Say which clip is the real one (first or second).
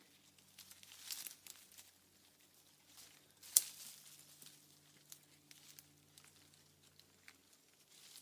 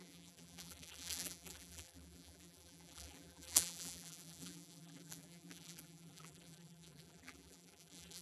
first